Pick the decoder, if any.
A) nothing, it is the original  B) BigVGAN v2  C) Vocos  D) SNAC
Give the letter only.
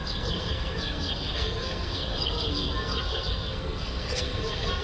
D